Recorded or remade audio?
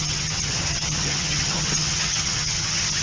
remade